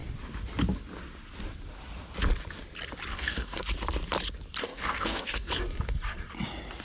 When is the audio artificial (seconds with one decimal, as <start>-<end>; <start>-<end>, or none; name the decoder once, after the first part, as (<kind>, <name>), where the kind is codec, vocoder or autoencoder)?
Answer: 3.1-3.6 (codec, DAC); 4.6-5.5